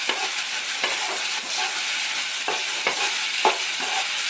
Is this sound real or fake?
real